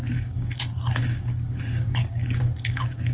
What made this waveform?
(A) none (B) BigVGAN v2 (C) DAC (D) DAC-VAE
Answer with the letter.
C